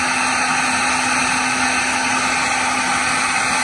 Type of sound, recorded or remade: recorded